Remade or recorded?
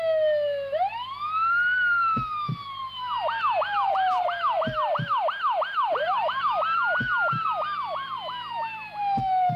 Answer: recorded